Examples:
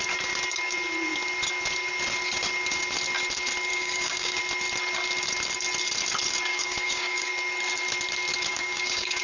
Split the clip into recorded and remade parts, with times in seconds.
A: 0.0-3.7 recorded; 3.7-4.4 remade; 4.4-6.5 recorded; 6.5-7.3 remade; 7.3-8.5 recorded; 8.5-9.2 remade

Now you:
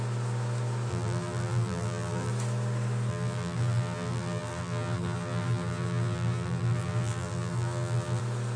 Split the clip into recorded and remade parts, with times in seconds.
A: 0.0-0.9 recorded; 0.9-2.3 remade; 2.3-3.1 recorded; 3.1-8.2 remade; 8.2-8.6 recorded

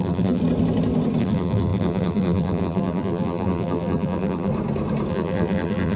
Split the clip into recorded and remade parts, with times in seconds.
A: 0.0-0.4 remade; 0.4-1.2 recorded; 1.2-4.5 remade; 4.5-5.1 recorded; 5.1-6.0 remade

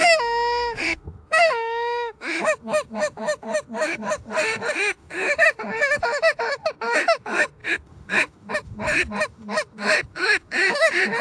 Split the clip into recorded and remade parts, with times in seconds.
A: 0.0-11.2 remade